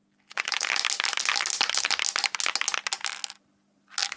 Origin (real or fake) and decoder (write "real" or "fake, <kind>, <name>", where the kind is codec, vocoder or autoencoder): real